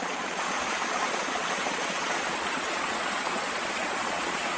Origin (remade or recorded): remade